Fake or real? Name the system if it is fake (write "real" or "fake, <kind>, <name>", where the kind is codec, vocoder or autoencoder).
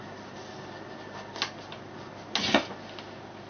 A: real